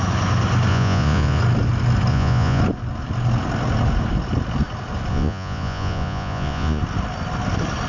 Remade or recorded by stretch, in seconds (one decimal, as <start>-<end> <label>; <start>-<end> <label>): 0.0-0.7 recorded; 0.7-1.4 remade; 1.4-2.1 recorded; 2.1-2.6 remade; 2.6-5.1 recorded; 5.1-6.8 remade; 6.8-7.9 recorded